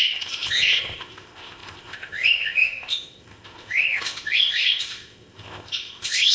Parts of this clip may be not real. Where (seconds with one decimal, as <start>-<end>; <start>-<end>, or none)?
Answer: 0.0-6.3